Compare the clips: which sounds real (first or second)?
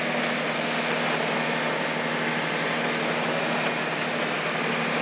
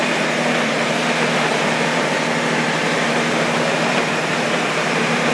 first